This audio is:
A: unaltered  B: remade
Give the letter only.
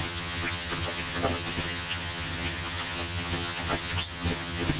B